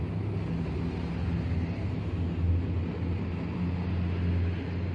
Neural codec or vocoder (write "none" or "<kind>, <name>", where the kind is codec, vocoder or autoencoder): none